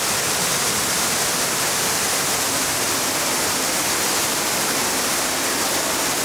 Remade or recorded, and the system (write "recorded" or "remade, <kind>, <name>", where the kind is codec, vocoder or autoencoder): recorded